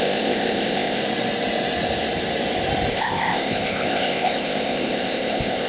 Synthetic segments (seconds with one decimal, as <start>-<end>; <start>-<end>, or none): 0.0-1.0; 2.9-5.7